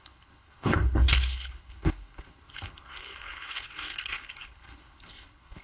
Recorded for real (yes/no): no